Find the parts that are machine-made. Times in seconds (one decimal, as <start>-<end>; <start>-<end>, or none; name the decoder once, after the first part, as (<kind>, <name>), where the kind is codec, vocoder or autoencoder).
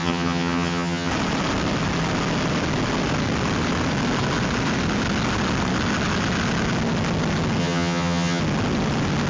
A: 0.0-1.1 (vocoder, HiFi-GAN); 7.6-8.4